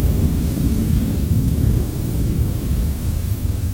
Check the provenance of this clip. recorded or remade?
remade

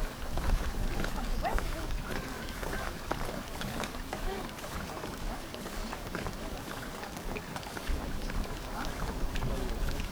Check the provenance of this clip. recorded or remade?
remade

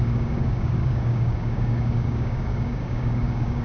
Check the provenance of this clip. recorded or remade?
remade